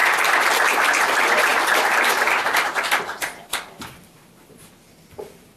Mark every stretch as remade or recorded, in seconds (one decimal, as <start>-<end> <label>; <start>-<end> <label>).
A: 0.0-0.5 recorded; 0.5-5.6 remade